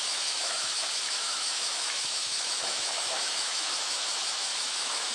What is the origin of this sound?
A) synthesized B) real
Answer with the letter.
A